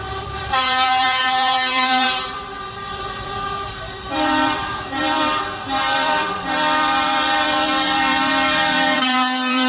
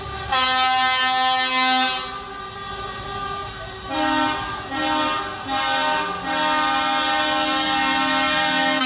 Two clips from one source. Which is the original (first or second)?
second